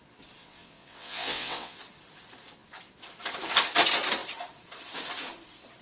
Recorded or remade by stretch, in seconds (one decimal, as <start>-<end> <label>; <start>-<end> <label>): 0.0-0.4 recorded; 0.4-1.8 remade; 1.8-5.8 recorded